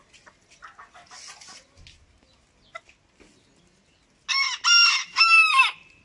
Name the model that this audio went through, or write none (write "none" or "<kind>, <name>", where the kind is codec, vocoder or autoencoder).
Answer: none